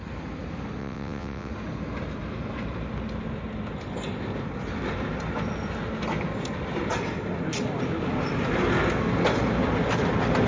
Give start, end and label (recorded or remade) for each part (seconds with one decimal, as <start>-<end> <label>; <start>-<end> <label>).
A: 0.0-0.8 recorded; 0.8-1.5 remade; 1.5-10.5 recorded